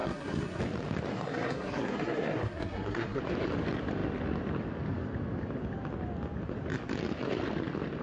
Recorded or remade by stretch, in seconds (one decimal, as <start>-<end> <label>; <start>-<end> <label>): 0.0-0.6 remade; 0.6-1.1 recorded; 1.1-3.2 remade; 3.2-8.0 recorded